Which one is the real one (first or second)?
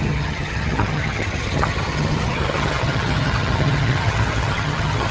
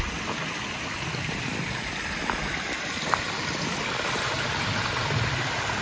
second